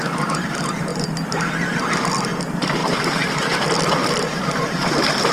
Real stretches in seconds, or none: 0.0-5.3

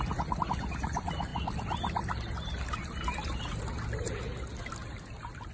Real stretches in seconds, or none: 0.0-5.5

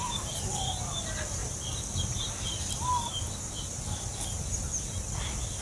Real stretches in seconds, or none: 0.0-5.6

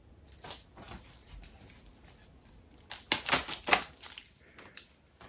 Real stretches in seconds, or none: 0.0-5.3

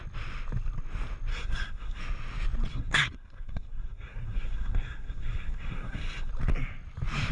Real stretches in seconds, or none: 0.0-1.3; 2.0-2.7; 6.3-7.3

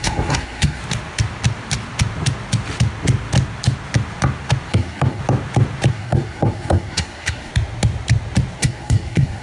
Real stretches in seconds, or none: 0.8-4.7; 5.2-5.9; 7.5-8.6

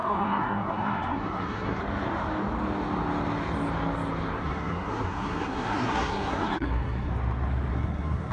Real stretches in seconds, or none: 1.8-4.4; 7.1-7.7